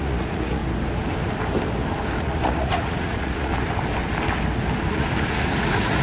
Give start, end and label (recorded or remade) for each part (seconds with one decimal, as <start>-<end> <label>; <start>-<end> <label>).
0.0-0.6 remade; 0.6-2.2 recorded; 2.2-3.5 remade; 3.5-4.9 recorded; 4.9-6.0 remade